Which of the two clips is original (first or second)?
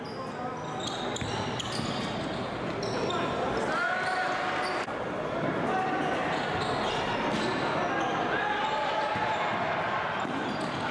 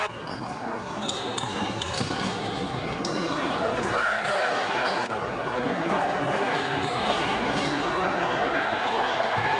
first